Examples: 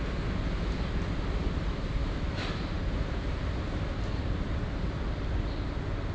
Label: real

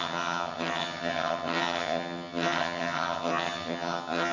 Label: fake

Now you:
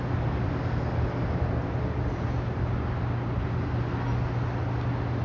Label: real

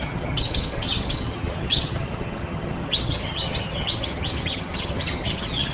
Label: fake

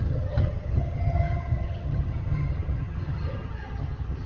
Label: fake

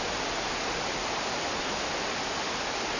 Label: real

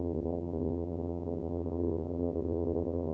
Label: fake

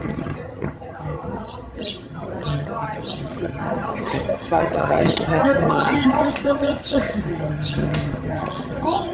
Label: fake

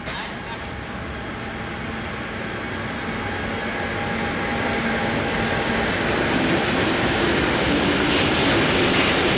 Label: real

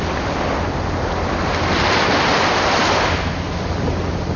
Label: real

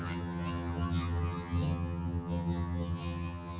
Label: fake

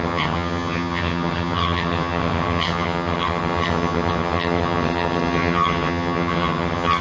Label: fake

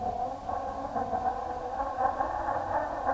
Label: real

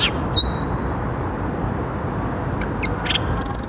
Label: real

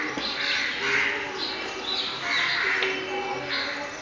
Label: real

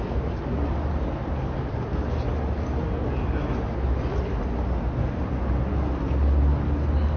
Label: real